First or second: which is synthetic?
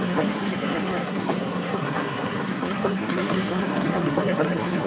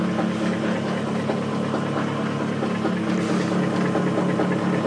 first